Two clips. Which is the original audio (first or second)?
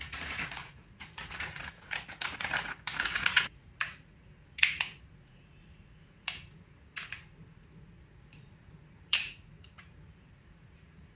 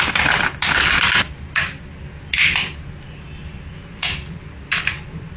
second